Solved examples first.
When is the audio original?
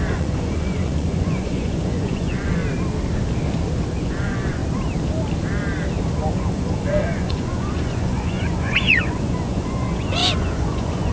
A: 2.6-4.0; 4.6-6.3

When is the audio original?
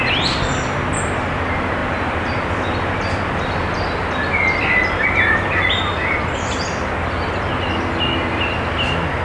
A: 0.0-9.2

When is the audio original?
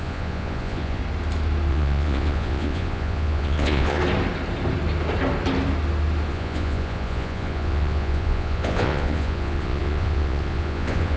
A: 1.0-1.7; 4.0-6.3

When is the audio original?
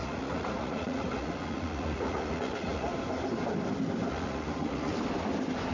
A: 2.9-4.1; 4.9-5.7